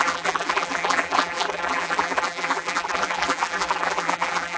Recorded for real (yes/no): no